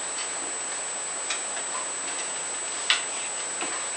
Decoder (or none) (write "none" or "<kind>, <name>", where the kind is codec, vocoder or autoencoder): none